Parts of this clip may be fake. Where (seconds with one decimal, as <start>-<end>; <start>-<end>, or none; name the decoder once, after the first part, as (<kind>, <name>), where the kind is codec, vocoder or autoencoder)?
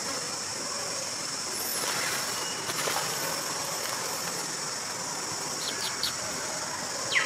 none